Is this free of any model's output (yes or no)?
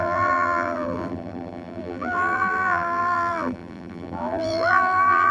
no